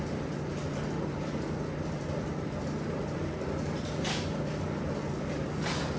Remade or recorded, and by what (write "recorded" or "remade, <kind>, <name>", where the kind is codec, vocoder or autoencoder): remade, vocoder, BigVGAN v2